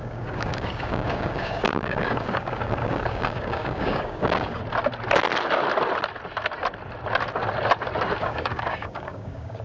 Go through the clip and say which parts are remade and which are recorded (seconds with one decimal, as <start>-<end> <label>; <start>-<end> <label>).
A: 0.0-4.6 remade; 4.6-8.2 recorded; 8.2-9.6 remade